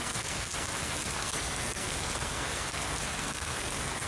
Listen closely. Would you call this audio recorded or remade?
remade